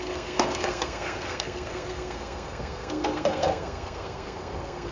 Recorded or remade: remade